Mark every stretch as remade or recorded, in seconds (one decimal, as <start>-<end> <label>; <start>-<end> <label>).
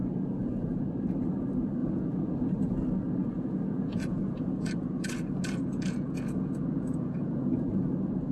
0.0-0.8 remade; 0.8-1.8 recorded; 1.8-2.5 remade; 2.5-3.2 recorded; 3.2-7.9 remade; 7.9-8.3 recorded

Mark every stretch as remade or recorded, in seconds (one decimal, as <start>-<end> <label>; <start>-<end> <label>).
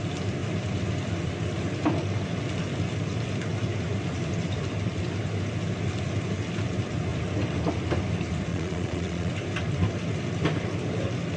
0.0-8.5 recorded; 8.5-9.3 remade; 9.3-11.4 recorded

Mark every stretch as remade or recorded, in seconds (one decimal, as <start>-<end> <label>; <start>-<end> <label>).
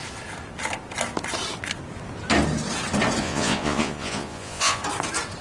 0.0-3.2 recorded; 3.2-4.8 remade; 4.8-5.4 recorded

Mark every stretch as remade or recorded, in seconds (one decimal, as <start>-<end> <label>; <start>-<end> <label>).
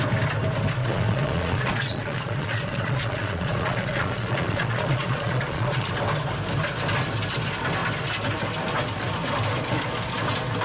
0.0-0.8 recorded; 0.8-5.9 remade; 5.9-10.6 recorded